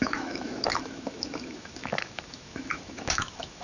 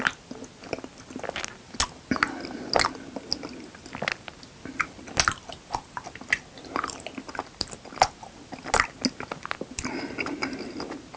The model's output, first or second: first